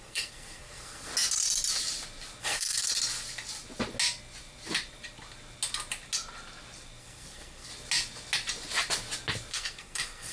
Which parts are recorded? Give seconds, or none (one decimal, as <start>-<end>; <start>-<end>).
1.1-2.4; 2.9-7.0; 7.7-9.5